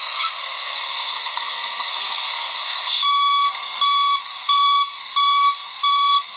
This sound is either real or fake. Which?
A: fake